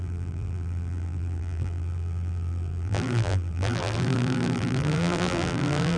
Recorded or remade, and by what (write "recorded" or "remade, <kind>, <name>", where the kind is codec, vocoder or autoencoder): remade, vocoder, BigVGAN v2